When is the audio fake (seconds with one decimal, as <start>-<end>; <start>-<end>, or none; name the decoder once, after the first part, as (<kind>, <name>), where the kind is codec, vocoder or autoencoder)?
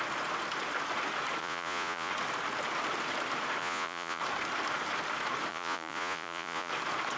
1.4-2.1 (vocoder, Vocos); 3.6-4.2; 5.5-6.7